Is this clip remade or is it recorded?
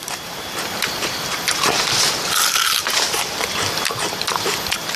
remade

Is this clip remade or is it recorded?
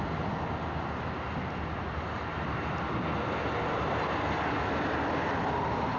recorded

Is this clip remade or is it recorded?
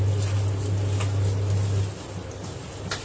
recorded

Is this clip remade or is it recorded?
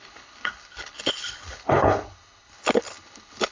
remade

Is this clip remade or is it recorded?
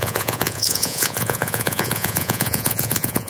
remade